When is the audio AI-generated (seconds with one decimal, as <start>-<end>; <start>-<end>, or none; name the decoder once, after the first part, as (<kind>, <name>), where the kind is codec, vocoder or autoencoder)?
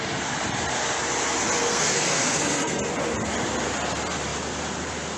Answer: 1.6-2.8 (codec, SNAC)